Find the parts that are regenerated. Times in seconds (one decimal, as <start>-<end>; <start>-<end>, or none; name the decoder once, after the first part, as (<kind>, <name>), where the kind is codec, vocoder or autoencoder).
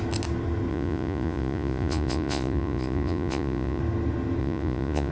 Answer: 0.7-3.8 (vocoder, Vocos); 4.4-5.1